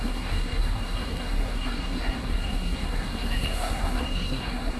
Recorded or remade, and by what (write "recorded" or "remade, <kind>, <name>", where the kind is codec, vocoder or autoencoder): remade, codec, SNAC